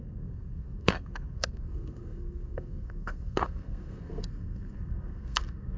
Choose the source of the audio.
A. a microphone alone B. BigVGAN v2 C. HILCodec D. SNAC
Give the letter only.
D